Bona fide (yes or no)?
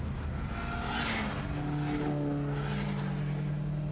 yes